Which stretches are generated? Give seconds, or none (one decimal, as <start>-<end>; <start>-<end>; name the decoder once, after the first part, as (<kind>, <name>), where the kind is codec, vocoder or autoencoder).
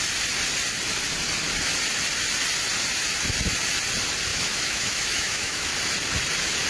4.3-5.7 (autoencoder, DAC-VAE)